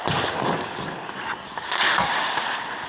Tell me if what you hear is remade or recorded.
recorded